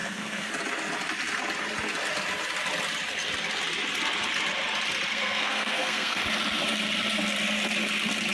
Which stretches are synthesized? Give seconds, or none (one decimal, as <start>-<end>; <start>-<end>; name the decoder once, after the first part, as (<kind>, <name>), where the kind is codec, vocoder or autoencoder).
0.0-0.5 (codec, SNAC); 5.1-6.2